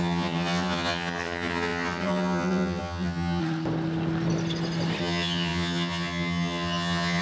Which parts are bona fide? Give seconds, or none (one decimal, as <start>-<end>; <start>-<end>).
3.4-5.0